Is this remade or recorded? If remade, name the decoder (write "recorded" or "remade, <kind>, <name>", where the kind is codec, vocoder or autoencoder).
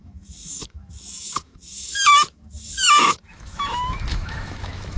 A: remade, autoencoder, DAC-VAE